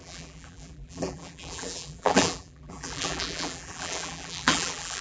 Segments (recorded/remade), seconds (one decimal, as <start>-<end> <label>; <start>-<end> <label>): 0.0-5.0 remade